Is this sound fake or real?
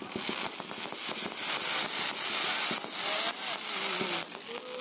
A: real